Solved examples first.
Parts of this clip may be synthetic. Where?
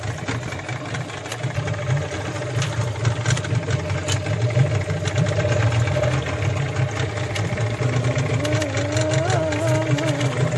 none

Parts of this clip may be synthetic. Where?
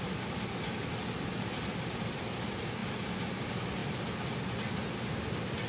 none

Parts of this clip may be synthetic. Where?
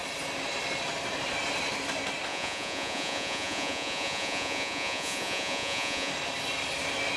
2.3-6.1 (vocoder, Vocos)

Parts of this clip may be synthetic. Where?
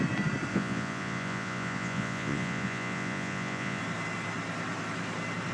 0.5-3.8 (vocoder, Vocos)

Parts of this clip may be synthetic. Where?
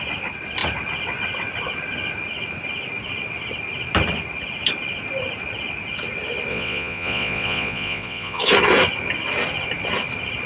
6.5-8.4 (vocoder, Vocos)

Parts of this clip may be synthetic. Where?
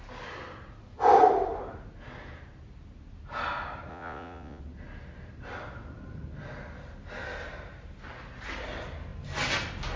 3.9-4.6 (vocoder, Vocos)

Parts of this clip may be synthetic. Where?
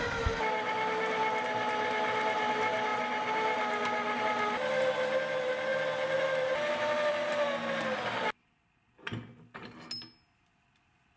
none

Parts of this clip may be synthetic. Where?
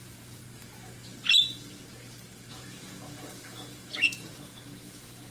0.0-0.4 (vocoder, Vocos); 2.5-5.3